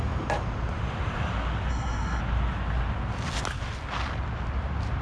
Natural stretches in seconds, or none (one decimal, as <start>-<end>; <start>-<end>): 0.0-1.7; 2.2-5.0